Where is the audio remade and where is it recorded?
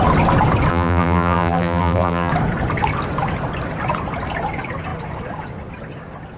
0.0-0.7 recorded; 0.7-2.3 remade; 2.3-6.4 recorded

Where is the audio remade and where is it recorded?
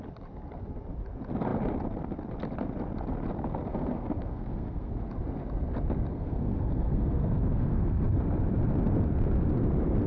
0.0-3.7 recorded; 3.7-4.9 remade; 4.9-6.1 recorded; 6.1-8.2 remade; 8.2-10.1 recorded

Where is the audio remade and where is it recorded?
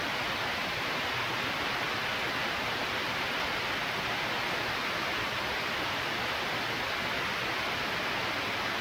0.0-8.8 recorded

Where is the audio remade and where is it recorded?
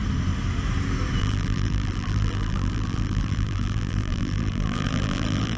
0.0-1.2 recorded; 1.2-5.6 remade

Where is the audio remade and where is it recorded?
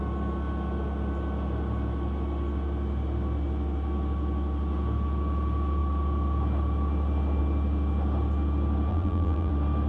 0.0-8.9 recorded; 8.9-9.5 remade; 9.5-9.9 recorded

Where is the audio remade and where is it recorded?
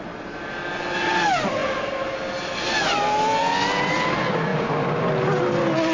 0.0-5.9 recorded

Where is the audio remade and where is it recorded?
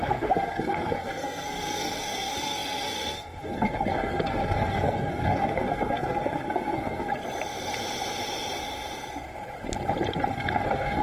0.0-7.1 remade; 7.1-10.3 recorded; 10.3-11.0 remade